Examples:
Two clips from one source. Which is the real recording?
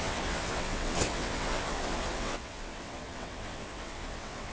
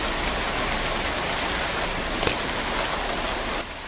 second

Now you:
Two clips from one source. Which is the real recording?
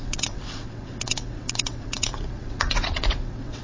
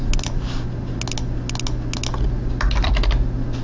second